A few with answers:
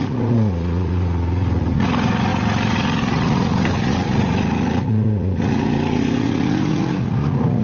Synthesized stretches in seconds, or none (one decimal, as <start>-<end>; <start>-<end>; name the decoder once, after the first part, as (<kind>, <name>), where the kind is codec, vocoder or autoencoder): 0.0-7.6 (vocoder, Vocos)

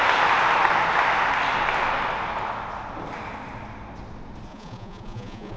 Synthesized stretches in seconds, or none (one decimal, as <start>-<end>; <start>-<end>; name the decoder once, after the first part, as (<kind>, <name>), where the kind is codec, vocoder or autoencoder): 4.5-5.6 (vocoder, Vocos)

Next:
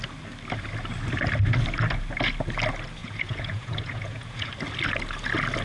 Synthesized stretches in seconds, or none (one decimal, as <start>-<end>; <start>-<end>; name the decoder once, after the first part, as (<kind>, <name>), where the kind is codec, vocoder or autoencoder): 3.0-4.5 (vocoder, Vocos)

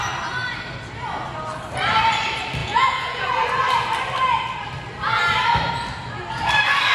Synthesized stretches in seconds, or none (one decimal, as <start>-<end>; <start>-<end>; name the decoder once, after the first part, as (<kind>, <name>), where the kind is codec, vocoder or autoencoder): 2.6-3.3 (vocoder, Vocos)